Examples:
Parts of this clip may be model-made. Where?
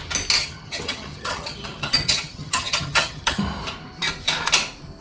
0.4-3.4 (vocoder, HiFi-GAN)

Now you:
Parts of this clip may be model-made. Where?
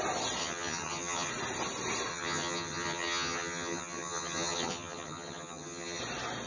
0.4-1.3 (vocoder, HiFi-GAN); 2.1-6.0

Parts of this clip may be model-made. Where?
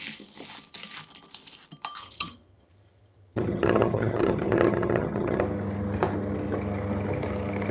2.0-5.4 (vocoder, HiFi-GAN)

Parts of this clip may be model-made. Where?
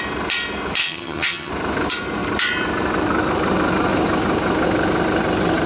0.8-1.5 (vocoder, HiFi-GAN)